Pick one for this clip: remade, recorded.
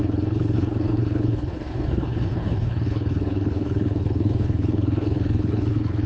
remade